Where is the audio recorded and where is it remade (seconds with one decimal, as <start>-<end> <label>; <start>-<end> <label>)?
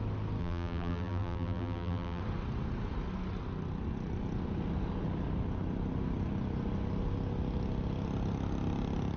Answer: 0.0-0.4 recorded; 0.4-2.2 remade; 2.2-9.2 recorded